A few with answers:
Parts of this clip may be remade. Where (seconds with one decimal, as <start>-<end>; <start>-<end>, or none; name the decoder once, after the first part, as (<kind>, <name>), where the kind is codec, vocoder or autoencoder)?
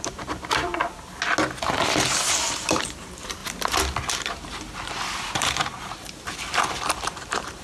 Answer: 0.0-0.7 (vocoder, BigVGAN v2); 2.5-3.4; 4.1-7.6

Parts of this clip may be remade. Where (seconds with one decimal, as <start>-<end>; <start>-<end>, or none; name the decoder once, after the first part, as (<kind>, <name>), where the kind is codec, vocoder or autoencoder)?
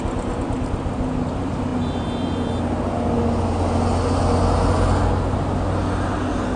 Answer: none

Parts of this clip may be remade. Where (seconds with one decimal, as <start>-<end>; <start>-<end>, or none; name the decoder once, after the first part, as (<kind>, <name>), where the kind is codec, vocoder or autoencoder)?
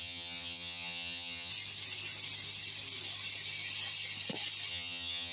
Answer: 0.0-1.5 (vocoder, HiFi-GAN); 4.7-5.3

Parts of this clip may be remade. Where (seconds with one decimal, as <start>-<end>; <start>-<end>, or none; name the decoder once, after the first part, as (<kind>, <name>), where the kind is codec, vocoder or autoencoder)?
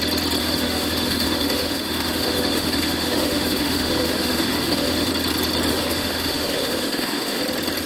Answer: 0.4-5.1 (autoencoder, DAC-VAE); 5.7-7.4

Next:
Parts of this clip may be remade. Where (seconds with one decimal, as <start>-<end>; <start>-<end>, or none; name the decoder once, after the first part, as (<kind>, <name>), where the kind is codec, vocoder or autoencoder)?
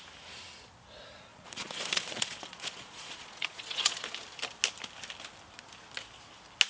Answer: 1.3-4.1 (vocoder, Vocos)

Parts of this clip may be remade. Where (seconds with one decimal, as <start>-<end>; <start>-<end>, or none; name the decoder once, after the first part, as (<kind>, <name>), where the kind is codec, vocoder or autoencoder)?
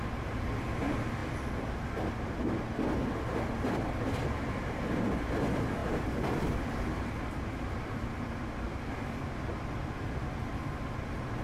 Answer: none